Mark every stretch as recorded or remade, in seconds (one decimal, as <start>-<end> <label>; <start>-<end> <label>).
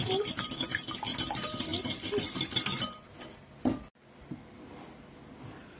0.0-5.8 recorded